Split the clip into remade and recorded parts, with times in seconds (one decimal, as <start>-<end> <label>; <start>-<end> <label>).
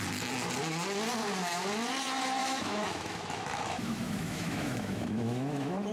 0.0-2.4 recorded; 2.4-5.9 remade